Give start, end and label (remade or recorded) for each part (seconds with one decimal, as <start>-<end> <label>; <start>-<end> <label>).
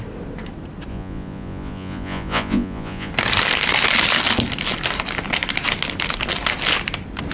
0.0-0.9 recorded; 0.9-3.1 remade; 3.1-7.3 recorded